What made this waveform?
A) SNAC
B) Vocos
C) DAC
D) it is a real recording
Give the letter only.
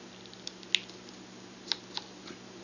D